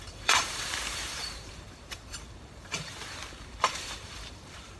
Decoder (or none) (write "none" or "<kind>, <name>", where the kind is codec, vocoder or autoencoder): vocoder, BigVGAN v2